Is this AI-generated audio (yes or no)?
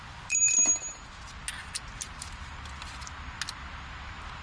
no